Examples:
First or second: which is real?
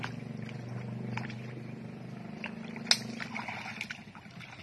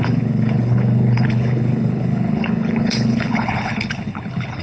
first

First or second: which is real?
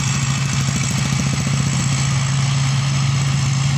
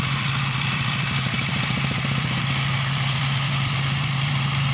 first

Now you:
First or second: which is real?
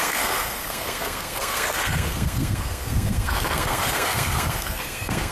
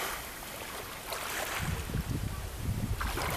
second